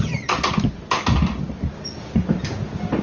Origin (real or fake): real